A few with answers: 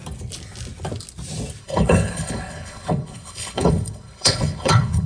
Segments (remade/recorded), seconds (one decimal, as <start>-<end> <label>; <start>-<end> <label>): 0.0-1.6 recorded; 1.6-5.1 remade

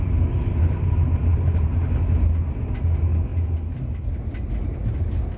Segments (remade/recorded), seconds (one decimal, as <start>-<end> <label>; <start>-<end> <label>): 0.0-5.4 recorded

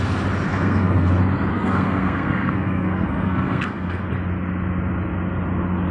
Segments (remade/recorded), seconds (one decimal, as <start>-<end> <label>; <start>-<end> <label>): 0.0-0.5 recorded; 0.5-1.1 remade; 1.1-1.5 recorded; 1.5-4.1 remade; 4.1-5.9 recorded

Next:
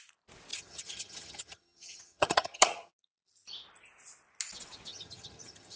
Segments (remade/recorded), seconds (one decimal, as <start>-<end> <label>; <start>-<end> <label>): 0.0-0.5 recorded; 0.5-2.9 remade; 2.9-4.9 recorded; 4.9-5.8 remade

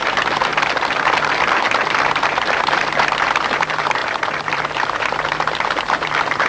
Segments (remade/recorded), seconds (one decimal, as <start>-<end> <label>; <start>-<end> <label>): 0.0-0.5 remade; 0.5-1.3 recorded; 1.3-2.8 remade; 2.8-3.5 recorded; 3.5-6.5 remade

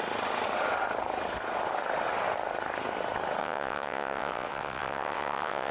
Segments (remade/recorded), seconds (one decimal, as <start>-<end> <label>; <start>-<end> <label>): 0.0-3.4 recorded; 3.4-5.7 remade